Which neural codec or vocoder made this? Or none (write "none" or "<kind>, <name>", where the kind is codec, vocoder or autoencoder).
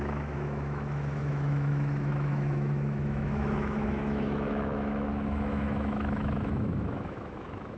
autoencoder, DAC-VAE